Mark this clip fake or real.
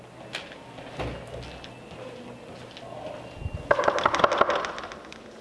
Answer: real